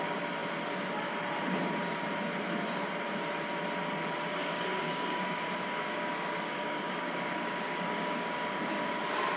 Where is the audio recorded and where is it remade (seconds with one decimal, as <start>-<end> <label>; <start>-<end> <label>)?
0.0-4.4 recorded; 4.4-8.9 remade; 8.9-9.4 recorded